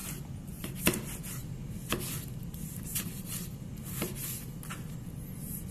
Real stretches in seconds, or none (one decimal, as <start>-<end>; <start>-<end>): 0.0-5.7